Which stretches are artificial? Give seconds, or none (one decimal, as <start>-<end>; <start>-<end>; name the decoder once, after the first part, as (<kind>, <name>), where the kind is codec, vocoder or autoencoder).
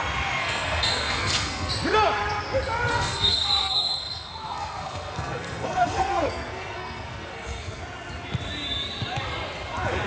0.4-1.7 (codec, SNAC); 2.9-7.8